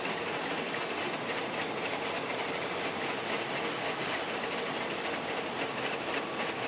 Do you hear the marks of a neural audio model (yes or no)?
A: yes